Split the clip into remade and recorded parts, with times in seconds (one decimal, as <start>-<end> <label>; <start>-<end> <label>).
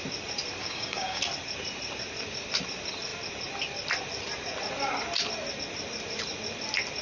0.0-0.6 recorded; 0.6-1.2 remade; 1.2-7.0 recorded